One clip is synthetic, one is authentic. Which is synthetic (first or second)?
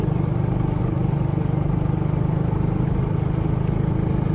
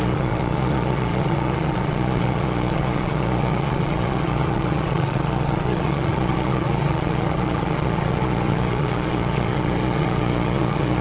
second